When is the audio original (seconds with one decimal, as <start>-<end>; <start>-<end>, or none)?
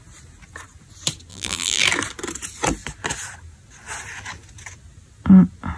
0.0-1.3; 1.8-5.8